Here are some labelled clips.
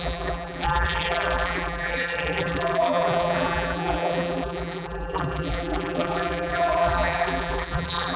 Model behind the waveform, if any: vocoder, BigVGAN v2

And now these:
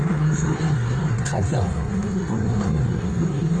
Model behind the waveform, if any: codec, SNAC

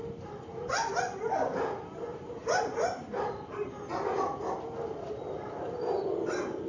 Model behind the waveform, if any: none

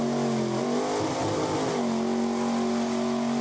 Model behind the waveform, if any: none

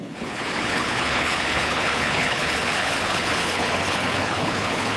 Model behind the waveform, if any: codec, HILCodec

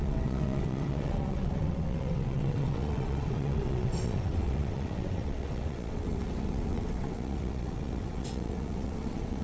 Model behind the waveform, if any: vocoder, WaveNeXt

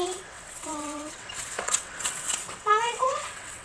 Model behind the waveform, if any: vocoder, WaveNeXt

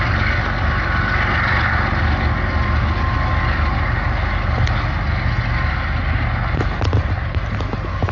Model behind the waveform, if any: none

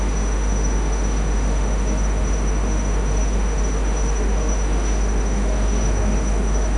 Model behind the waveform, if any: autoencoder, DAC-VAE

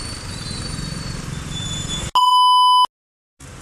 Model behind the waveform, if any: none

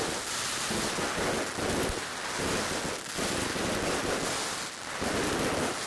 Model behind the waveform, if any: none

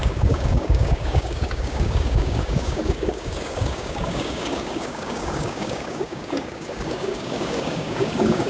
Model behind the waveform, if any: codec, DAC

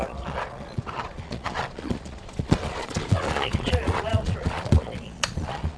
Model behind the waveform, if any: vocoder, Vocos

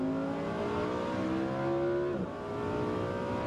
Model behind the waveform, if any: none